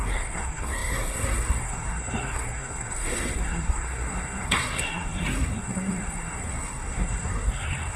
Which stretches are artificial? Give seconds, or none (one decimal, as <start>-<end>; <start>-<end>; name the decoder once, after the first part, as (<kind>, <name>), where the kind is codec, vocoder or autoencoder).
0.0-8.0 (codec, SNAC)